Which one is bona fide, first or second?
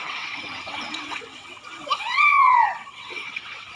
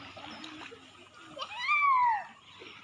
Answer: second